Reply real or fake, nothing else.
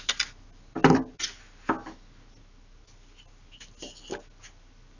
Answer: real